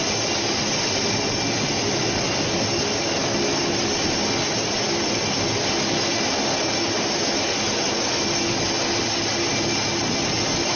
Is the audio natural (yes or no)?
yes